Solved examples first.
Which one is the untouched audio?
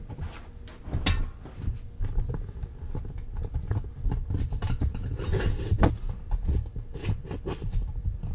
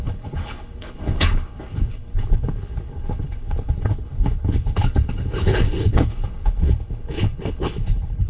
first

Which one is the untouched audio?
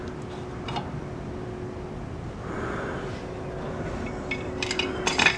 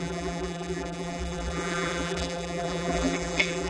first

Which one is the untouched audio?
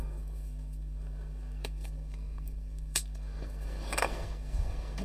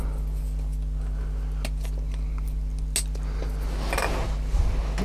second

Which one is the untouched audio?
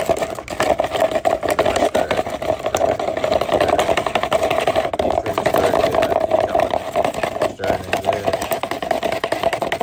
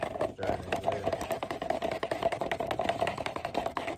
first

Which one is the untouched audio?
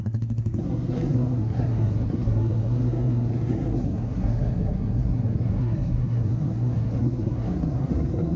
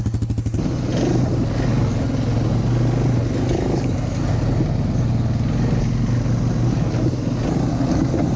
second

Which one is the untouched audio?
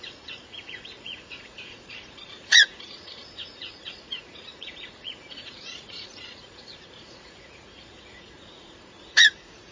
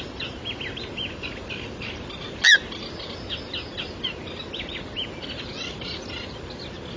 second